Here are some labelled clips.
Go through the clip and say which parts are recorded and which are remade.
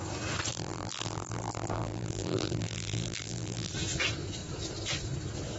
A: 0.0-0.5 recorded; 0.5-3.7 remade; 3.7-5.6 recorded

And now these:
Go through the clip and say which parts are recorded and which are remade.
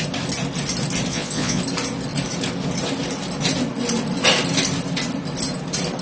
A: 0.0-1.1 recorded; 1.1-1.6 remade; 1.6-6.0 recorded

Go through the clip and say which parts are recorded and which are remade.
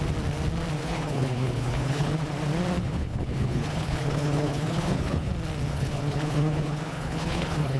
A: 0.0-0.8 recorded; 0.8-2.1 remade; 2.1-2.8 recorded; 2.8-5.3 remade; 5.3-5.7 recorded; 5.7-7.8 remade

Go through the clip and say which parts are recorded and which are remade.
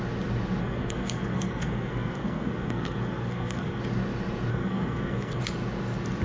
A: 0.0-0.6 recorded; 0.6-3.8 remade; 3.8-4.5 recorded; 4.5-5.4 remade; 5.4-6.2 recorded